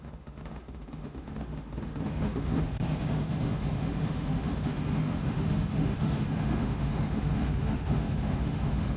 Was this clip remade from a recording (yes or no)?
yes